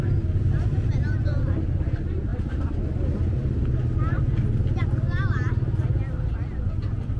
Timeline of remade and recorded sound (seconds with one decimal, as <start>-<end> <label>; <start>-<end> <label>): 0.0-7.2 recorded